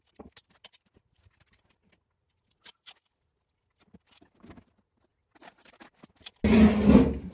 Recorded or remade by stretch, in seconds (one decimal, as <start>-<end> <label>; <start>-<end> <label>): 0.0-7.3 recorded